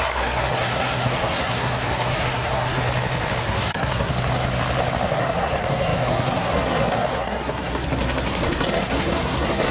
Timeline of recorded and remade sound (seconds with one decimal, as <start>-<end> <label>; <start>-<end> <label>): 0.0-2.8 remade; 2.8-3.4 recorded; 3.4-4.1 remade; 4.1-5.1 recorded; 5.1-9.7 remade